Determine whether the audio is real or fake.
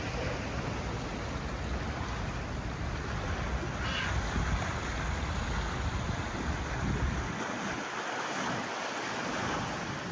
real